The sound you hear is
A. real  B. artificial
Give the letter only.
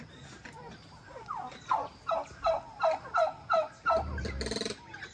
A